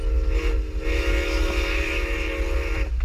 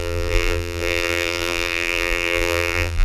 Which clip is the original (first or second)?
first